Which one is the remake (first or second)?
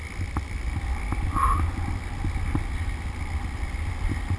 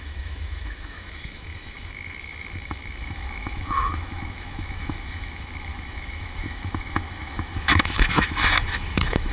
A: second